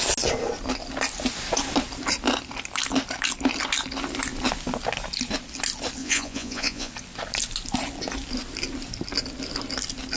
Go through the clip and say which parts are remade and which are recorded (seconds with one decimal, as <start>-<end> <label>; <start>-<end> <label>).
0.0-6.0 recorded; 6.0-6.9 remade; 6.9-10.2 recorded